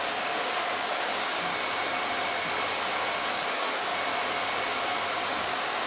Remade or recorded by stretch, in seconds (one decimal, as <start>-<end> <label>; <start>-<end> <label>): 0.0-1.5 remade; 1.5-3.3 recorded; 3.3-3.9 remade; 3.9-5.4 recorded; 5.4-5.9 remade